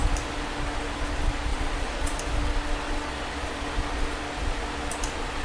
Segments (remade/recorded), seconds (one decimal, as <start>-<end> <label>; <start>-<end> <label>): 0.0-1.5 recorded; 1.5-2.2 remade; 2.2-5.4 recorded